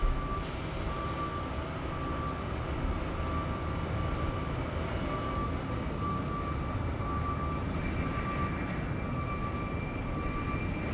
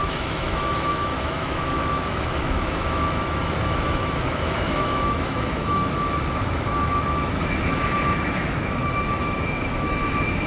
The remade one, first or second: second